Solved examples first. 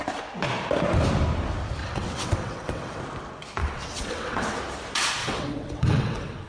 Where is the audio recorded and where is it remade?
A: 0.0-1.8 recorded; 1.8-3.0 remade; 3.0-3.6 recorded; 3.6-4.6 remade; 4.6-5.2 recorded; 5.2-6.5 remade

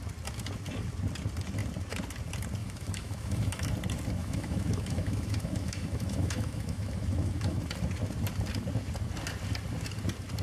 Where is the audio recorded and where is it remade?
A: 0.0-2.6 recorded; 2.6-3.7 remade; 3.7-4.2 recorded; 4.2-7.6 remade; 7.6-10.4 recorded

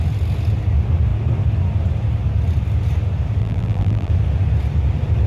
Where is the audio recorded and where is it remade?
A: 0.0-3.4 recorded; 3.4-4.1 remade; 4.1-5.3 recorded